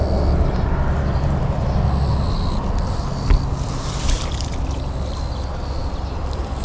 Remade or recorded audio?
recorded